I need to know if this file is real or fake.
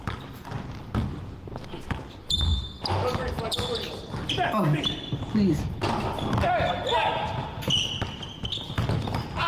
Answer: real